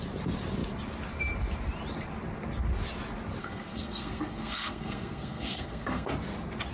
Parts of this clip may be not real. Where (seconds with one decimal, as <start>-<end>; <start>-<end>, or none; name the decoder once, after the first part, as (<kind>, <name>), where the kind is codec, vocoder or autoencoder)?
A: 3.4-6.1 (codec, SNAC)